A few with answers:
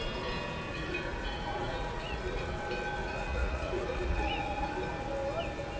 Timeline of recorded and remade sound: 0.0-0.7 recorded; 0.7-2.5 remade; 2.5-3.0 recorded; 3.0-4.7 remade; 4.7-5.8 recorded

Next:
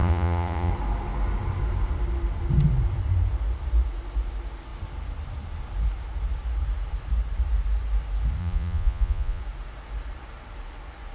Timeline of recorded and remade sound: 0.0-0.7 remade; 0.7-8.4 recorded; 8.4-9.4 remade; 9.4-11.1 recorded

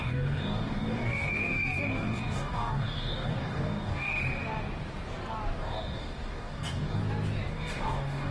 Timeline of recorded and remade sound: 0.0-4.2 remade; 4.2-5.6 recorded; 5.6-7.0 remade; 7.0-7.5 recorded; 7.5-8.3 remade

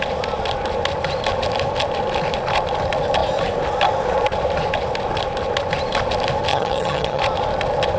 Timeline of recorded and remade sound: 0.0-6.5 recorded; 6.5-7.2 remade; 7.2-8.0 recorded

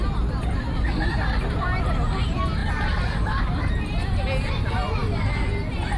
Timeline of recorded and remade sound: 0.0-2.6 recorded; 2.6-3.7 remade; 3.7-6.0 recorded